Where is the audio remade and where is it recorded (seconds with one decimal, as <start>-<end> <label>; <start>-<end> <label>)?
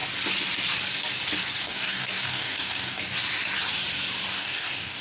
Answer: 0.0-1.6 recorded; 1.6-3.0 remade; 3.0-4.4 recorded; 4.4-5.0 remade